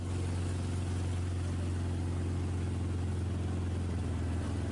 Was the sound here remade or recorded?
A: recorded